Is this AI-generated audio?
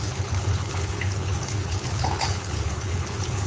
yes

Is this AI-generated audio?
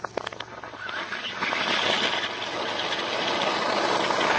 no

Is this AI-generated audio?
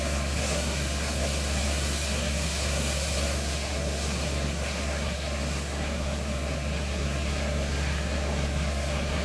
yes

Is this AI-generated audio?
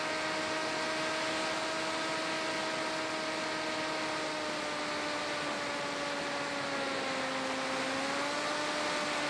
no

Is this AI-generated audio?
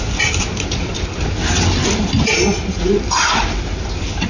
no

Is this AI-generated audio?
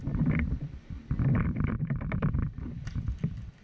yes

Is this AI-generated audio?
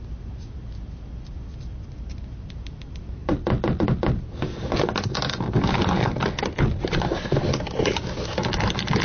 no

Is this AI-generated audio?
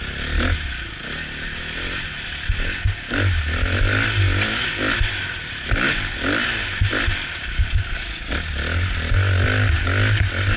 no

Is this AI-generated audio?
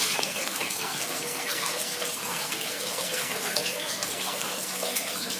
yes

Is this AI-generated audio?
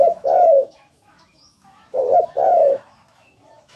yes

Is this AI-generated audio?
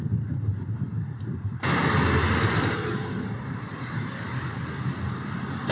no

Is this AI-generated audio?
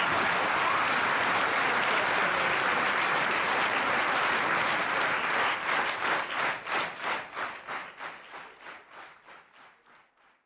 no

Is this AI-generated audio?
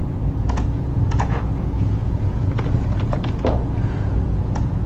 yes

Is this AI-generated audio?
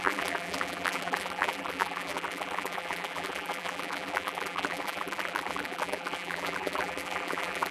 yes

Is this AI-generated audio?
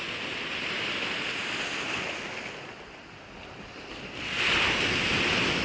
no